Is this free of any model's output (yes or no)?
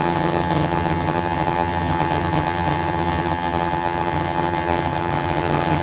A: no